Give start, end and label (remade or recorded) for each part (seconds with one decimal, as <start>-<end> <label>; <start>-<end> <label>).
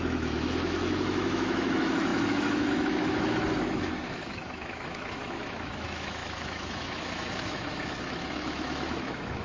0.0-9.4 remade